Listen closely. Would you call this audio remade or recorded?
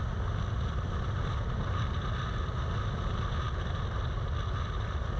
recorded